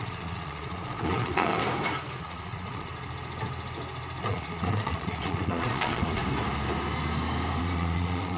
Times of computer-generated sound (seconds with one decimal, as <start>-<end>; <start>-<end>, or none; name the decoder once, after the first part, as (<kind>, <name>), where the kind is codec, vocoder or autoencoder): 0.0-1.6 (vocoder, Vocos); 2.2-2.9; 4.2-6.2; 7.6-8.4